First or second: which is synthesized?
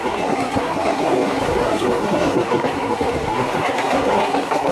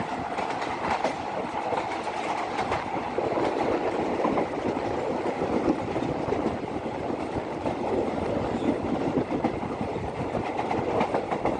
first